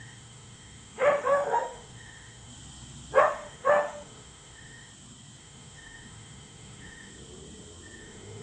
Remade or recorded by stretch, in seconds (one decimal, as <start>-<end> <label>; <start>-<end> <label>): 0.0-2.5 remade; 2.5-3.2 recorded; 3.2-4.9 remade; 4.9-5.4 recorded; 5.4-7.1 remade; 7.1-8.0 recorded; 8.0-8.4 remade